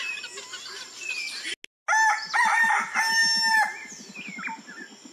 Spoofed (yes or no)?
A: no